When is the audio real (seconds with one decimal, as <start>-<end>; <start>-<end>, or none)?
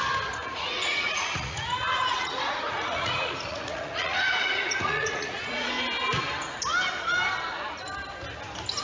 0.0-0.4; 5.7-8.8